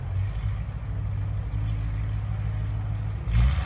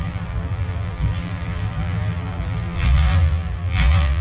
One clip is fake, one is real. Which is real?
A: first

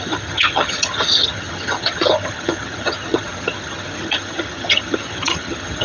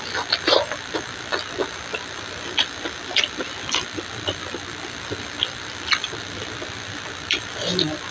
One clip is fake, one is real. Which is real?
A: second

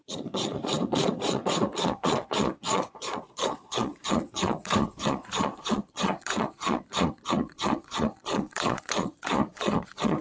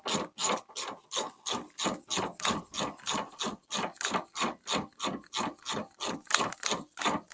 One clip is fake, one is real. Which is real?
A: second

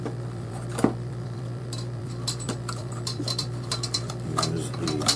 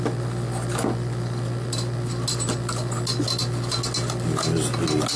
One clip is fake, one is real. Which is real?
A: second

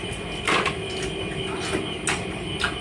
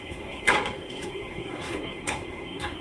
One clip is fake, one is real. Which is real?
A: first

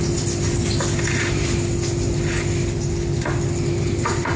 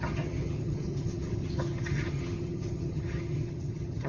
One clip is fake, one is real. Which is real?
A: first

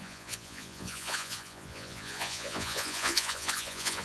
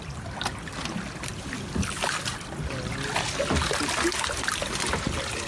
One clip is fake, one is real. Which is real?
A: second